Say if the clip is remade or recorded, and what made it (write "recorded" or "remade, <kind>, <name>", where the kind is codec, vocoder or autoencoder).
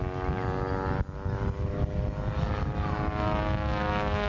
recorded